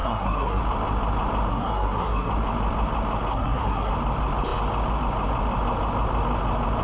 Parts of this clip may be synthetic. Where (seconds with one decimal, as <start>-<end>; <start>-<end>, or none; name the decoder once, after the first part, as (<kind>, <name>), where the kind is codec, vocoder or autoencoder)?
0.0-0.6 (codec, SNAC); 1.5-2.3; 3.3-3.9